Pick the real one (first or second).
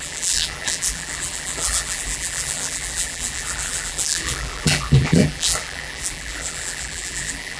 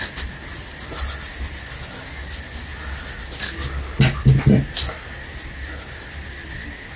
second